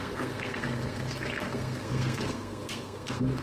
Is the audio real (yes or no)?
no